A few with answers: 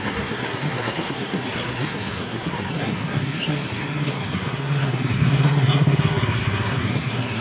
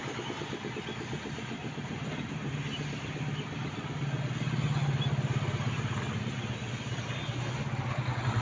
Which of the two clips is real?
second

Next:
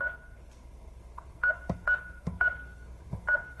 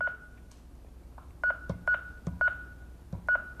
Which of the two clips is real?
second